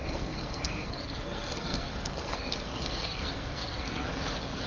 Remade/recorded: remade